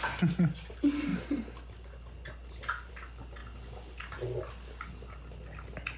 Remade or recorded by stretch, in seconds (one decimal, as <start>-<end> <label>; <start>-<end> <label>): 0.0-6.0 recorded

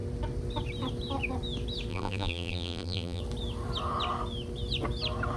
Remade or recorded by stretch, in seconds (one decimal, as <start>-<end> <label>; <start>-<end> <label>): 0.0-1.9 recorded; 1.9-3.2 remade; 3.2-5.4 recorded

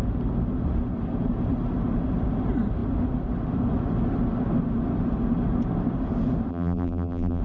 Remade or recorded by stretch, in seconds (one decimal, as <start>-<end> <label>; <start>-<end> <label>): 0.0-6.5 recorded; 6.5-7.4 remade

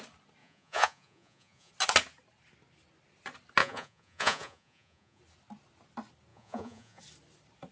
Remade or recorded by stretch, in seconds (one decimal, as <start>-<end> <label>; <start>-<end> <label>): 0.0-0.4 recorded; 0.4-1.7 remade; 1.7-3.6 recorded; 3.6-5.2 remade; 5.2-6.3 recorded; 6.3-7.0 remade; 7.0-7.7 recorded